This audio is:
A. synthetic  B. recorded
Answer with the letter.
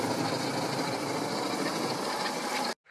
B